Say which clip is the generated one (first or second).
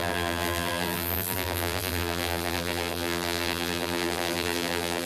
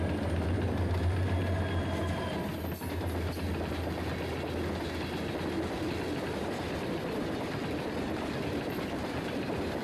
first